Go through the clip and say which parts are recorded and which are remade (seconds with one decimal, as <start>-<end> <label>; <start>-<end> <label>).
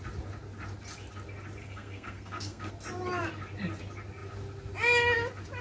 0.0-1.6 recorded; 1.6-2.7 remade; 2.7-5.6 recorded